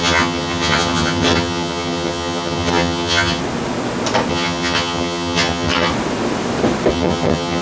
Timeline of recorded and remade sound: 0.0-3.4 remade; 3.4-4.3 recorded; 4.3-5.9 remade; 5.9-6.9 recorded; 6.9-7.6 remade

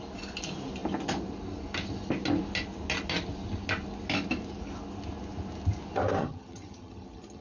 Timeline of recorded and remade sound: 0.0-6.2 recorded; 6.2-7.4 remade

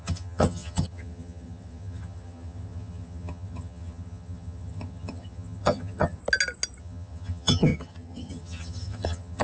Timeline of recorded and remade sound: 0.0-6.2 remade; 6.2-6.8 recorded; 6.8-9.4 remade

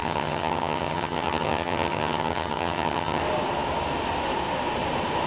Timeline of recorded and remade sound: 0.0-3.2 remade; 3.2-5.3 recorded

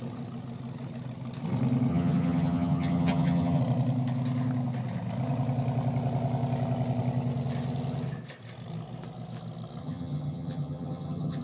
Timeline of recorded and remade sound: 0.0-1.9 recorded; 1.9-3.6 remade; 3.6-9.8 recorded; 9.8-11.4 remade

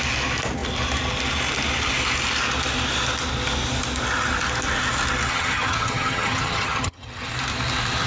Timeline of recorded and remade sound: 0.0-5.3 recorded; 5.3-7.3 remade; 7.3-8.1 recorded